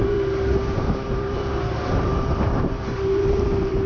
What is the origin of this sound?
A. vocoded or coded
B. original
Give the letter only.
A